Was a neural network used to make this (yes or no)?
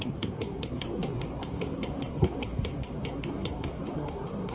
yes